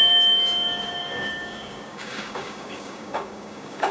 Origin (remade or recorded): remade